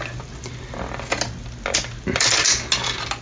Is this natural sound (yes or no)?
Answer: yes